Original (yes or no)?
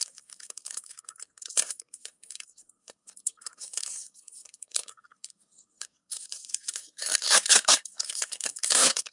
no